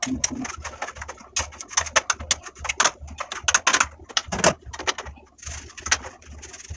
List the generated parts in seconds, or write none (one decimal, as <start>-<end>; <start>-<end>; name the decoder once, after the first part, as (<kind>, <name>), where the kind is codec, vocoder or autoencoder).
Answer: none